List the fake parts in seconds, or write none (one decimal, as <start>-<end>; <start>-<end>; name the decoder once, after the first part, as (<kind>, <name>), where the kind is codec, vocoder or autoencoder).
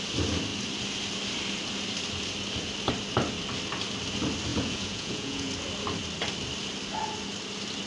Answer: 4.5-5.5 (vocoder, Vocos)